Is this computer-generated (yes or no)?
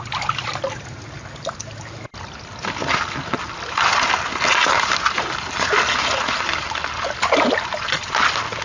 no